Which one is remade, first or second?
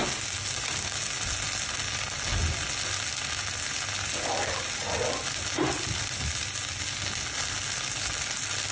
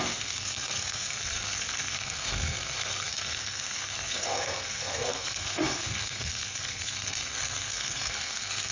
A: second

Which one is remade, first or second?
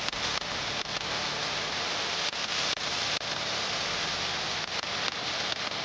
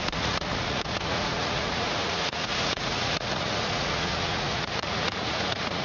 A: second